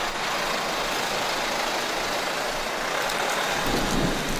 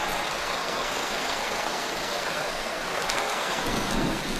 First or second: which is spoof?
second